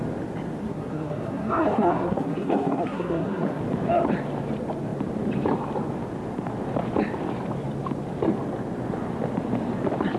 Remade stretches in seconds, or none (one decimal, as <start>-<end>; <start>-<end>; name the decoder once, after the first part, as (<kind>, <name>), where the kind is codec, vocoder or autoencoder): 0.6-3.6 (codec, SNAC)